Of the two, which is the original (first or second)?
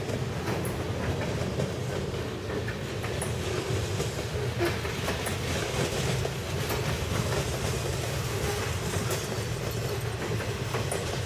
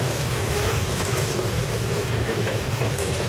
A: first